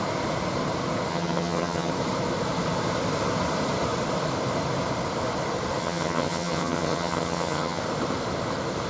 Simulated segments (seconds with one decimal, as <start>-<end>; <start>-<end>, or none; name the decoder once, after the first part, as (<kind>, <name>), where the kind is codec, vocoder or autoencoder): 1.1-1.9 (vocoder, HiFi-GAN); 5.8-7.8